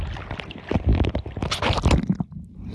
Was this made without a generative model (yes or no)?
yes